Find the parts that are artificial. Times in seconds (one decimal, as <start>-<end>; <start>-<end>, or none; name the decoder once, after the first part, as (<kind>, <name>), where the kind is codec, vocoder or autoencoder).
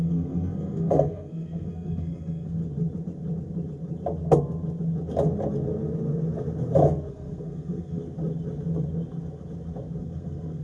0.0-2.6 (codec, SNAC); 7.1-8.0; 10.0-10.6